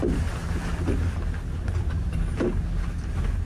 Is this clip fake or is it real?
real